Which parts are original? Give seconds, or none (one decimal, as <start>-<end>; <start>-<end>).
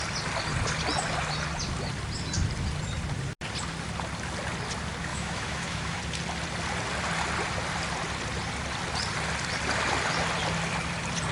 0.0-5.1; 6.0-11.3